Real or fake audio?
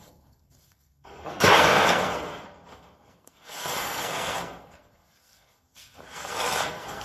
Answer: fake